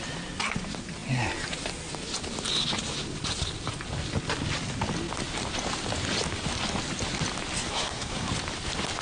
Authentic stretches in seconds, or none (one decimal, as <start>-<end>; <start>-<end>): 0.0-7.7; 8.3-9.0